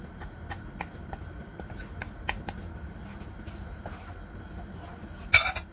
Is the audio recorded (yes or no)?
yes